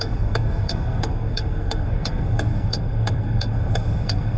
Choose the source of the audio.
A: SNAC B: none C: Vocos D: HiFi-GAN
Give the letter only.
A